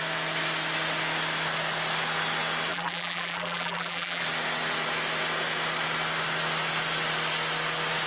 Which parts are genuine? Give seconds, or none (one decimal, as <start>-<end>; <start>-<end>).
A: 0.0-2.7; 4.2-8.1